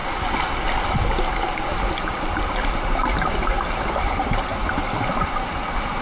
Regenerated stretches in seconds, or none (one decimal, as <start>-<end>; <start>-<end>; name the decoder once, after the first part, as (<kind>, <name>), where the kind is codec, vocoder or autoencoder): none